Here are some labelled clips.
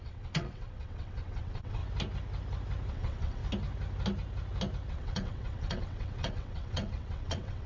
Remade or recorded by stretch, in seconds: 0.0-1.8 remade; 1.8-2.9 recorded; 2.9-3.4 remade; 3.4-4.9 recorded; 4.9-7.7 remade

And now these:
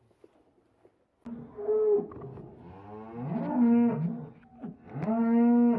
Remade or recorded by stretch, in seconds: 0.0-5.8 recorded

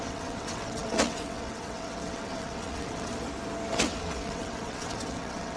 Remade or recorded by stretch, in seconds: 0.0-3.1 remade; 3.1-3.7 recorded; 3.7-5.6 remade

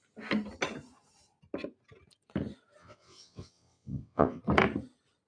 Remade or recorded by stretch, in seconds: 0.0-2.8 recorded; 2.8-4.4 remade; 4.4-5.3 recorded